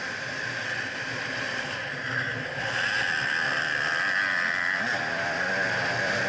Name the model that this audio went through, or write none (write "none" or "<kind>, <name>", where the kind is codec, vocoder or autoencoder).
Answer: none